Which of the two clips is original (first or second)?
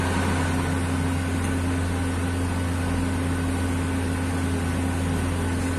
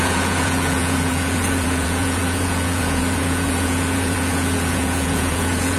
first